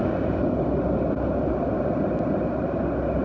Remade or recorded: recorded